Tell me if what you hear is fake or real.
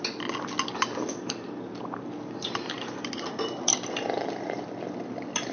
real